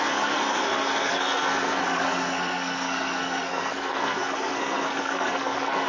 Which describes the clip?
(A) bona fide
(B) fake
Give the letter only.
B